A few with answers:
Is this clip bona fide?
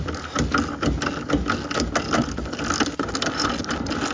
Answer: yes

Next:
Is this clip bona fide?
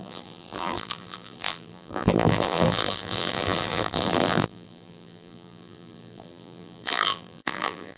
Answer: no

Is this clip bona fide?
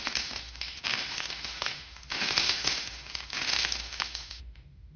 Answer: no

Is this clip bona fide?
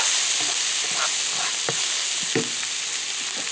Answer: yes